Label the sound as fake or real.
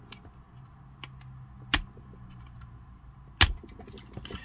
real